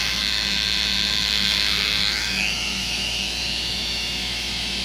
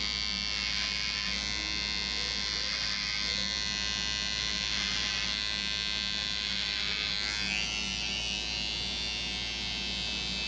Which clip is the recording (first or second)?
second